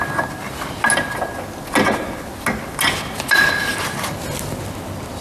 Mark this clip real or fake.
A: real